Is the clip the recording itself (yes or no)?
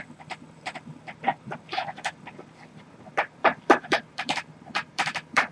no